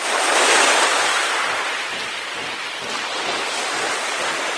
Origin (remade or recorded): recorded